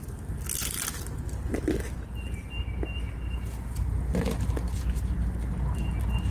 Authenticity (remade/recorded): recorded